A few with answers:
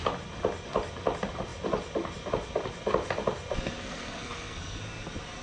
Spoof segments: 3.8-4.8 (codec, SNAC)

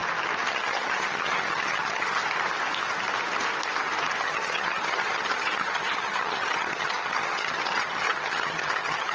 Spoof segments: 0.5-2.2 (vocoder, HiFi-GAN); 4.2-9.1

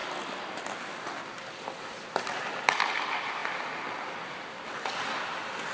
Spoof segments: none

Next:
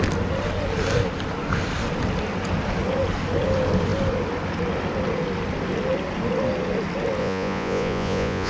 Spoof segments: 7.2-8.5 (vocoder, Vocos)

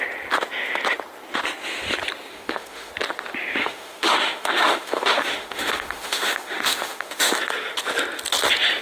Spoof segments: 2.3-2.9 (autoencoder, DAC-VAE); 3.6-7.3

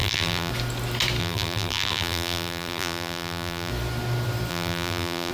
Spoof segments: 0.0-0.5 (vocoder, BigVGAN v2); 1.2-3.7; 4.5-5.3

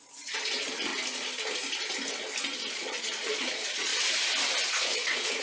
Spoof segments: 0.0-0.9 (vocoder, Vocos); 2.7-3.9; 4.7-5.4

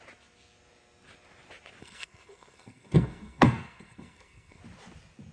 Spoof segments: 1.8-4.6 (codec, SNAC)